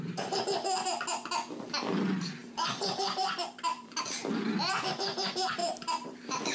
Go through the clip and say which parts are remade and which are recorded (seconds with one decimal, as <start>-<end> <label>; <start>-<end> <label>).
0.0-2.4 recorded; 2.4-4.0 remade; 4.0-5.6 recorded; 5.6-6.5 remade